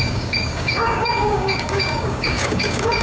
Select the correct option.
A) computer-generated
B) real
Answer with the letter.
A